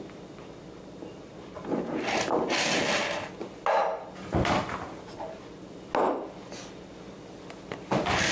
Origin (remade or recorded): recorded